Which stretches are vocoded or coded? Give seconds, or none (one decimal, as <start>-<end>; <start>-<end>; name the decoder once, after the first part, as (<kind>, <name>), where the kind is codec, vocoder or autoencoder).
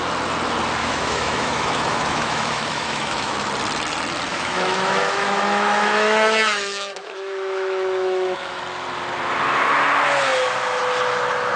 0.8-3.5 (autoencoder, DAC-VAE); 4.3-8.6